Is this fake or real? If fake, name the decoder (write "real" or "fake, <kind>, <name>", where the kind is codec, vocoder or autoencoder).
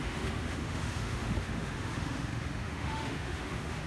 fake, autoencoder, DAC-VAE